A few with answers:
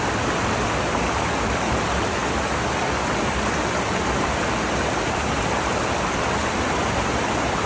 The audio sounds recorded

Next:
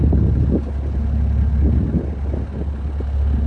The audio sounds recorded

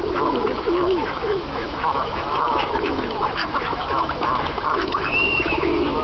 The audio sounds remade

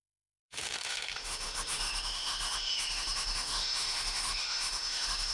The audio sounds remade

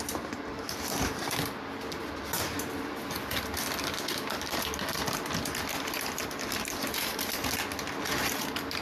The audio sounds recorded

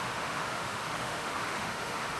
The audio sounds remade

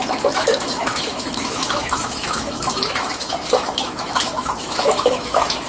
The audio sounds remade